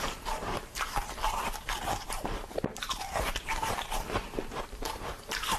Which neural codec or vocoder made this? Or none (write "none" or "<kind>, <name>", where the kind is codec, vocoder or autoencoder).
vocoder, BigVGAN v2